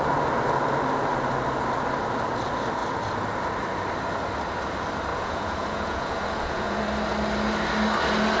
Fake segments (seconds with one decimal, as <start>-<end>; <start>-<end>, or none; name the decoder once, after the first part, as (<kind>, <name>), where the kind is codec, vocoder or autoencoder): 5.1-6.8 (vocoder, Vocos)